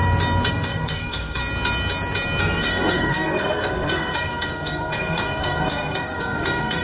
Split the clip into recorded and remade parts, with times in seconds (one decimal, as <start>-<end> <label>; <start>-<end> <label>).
0.0-0.5 recorded; 0.5-1.4 remade; 1.4-2.4 recorded; 2.4-6.8 remade